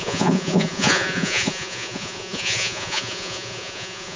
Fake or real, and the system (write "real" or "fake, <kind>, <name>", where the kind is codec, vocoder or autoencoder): fake, vocoder, Vocos